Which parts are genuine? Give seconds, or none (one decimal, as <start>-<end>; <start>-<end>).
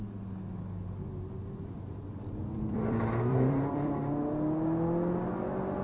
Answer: 0.0-2.5; 4.0-5.8